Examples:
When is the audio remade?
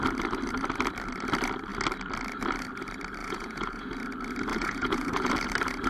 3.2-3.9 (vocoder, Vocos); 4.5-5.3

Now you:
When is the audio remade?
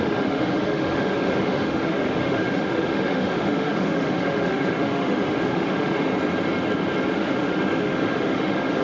0.0-6.1 (autoencoder, DAC-VAE); 7.1-8.8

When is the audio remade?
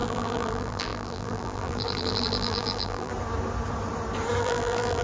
0.0-3.1 (vocoder, BigVGAN v2); 4.4-5.0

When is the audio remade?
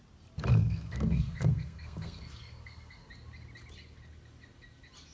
0.5-3.1 (codec, SNAC)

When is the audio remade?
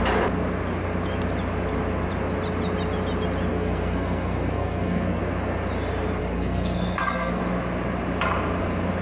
3.5-5.2 (codec, SNAC); 6.2-7.4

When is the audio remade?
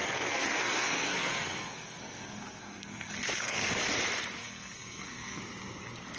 0.0-3.7 (codec, SNAC); 4.4-5.4